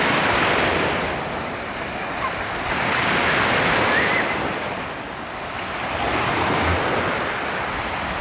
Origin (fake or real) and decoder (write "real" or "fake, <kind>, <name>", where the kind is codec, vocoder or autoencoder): real